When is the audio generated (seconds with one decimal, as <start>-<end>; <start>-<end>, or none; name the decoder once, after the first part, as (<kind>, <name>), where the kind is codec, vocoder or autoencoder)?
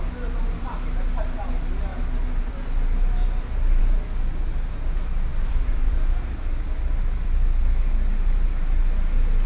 none